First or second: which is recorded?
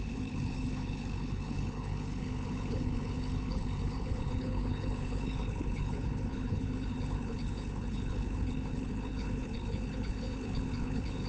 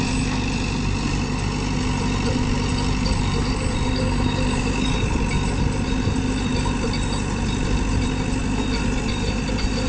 second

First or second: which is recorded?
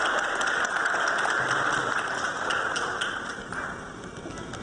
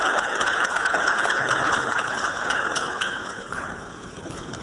first